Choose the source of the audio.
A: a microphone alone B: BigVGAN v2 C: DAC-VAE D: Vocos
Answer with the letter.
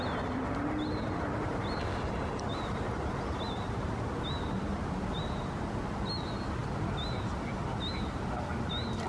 A